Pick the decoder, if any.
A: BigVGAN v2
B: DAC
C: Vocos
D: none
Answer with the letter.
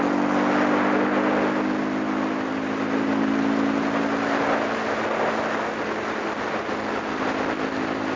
D